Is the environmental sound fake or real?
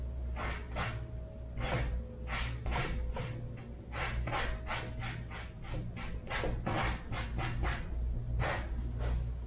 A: real